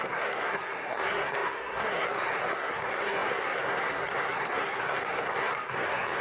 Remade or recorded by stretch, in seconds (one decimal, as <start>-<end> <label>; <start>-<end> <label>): 0.0-6.2 remade